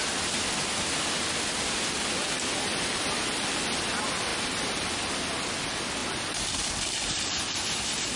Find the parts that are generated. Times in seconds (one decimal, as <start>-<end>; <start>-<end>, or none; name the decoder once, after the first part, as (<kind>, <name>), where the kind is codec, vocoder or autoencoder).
none